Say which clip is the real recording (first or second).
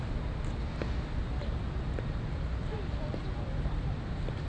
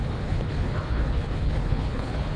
first